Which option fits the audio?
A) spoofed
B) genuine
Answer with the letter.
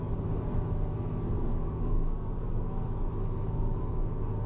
A